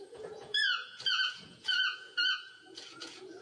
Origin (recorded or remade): remade